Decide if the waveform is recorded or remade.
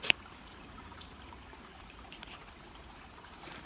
remade